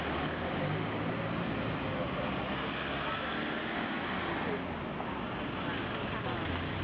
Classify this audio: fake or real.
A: real